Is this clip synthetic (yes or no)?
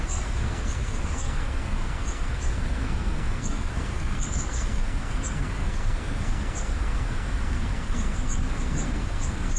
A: yes